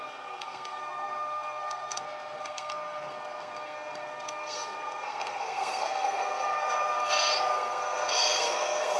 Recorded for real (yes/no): no